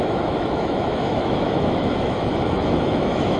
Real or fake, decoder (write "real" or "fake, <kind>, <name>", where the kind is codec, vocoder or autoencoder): fake, autoencoder, DAC-VAE